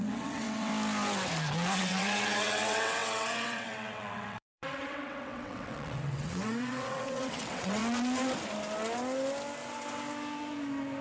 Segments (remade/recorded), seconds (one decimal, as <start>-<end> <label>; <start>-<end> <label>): 0.0-0.7 remade; 0.7-1.8 recorded; 1.8-7.8 remade; 7.8-11.0 recorded